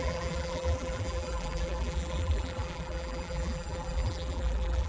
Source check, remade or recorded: remade